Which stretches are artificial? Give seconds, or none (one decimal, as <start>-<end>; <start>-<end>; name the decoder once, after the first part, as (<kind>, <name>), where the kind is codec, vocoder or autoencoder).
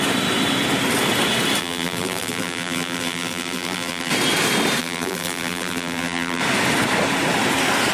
1.6-4.1 (vocoder, BigVGAN v2); 4.8-6.4